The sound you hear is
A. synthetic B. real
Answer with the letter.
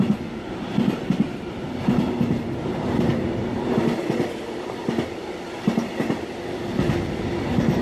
B